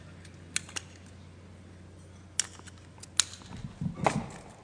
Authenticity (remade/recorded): recorded